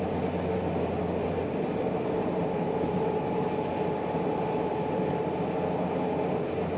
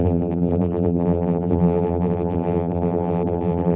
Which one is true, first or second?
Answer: first